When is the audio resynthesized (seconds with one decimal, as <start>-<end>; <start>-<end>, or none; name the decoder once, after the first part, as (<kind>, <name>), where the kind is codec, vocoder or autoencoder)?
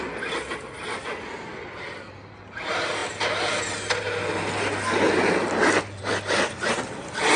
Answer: none